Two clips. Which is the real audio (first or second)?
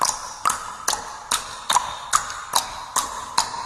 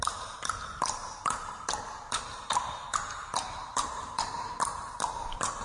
first